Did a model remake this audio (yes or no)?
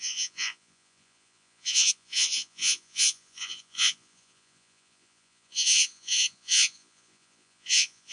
yes